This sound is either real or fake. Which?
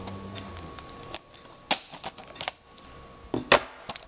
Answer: real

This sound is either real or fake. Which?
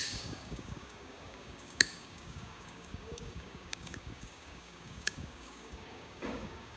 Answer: fake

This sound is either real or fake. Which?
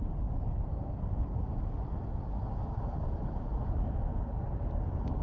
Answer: real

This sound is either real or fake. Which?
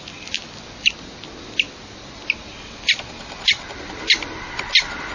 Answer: real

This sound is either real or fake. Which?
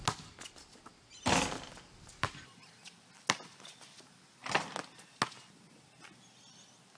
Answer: real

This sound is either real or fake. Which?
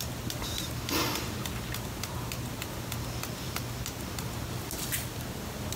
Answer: real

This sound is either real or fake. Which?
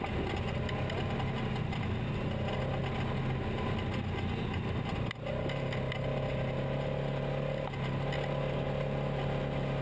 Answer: real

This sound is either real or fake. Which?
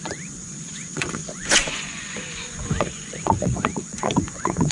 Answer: fake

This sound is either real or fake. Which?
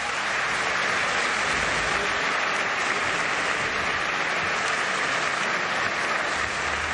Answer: real